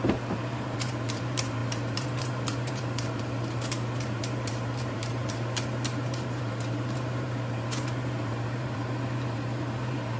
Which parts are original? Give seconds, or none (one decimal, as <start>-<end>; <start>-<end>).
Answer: none